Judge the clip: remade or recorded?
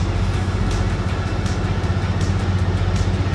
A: recorded